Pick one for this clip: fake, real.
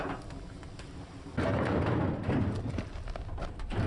real